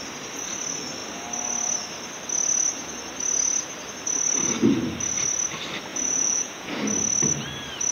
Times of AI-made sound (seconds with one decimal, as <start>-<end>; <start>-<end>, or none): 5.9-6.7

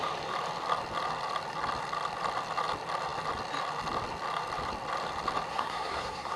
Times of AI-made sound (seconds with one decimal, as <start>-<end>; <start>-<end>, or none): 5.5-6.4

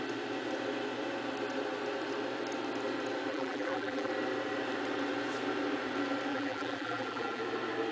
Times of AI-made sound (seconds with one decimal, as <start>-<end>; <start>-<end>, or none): 3.3-4.1; 6.3-7.4

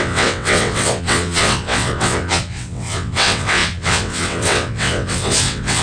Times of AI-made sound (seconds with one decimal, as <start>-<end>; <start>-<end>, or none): 0.0-5.8

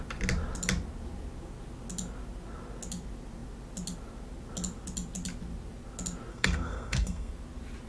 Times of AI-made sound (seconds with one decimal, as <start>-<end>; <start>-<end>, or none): 6.3-7.3

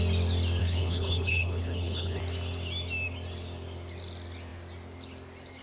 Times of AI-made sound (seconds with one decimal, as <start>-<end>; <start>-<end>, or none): 0.6-2.2

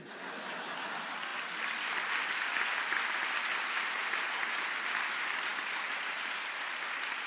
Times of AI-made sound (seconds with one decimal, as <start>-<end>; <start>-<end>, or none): none

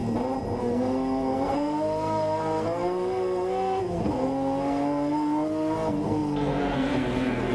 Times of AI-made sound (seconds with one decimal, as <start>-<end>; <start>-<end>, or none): 0.6-7.5